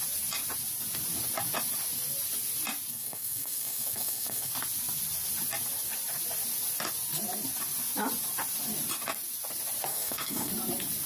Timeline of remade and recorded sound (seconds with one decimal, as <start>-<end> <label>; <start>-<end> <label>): 0.0-2.9 recorded; 2.9-4.5 remade; 4.5-9.9 recorded; 9.9-10.5 remade; 10.5-11.1 recorded